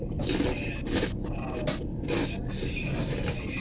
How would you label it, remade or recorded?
recorded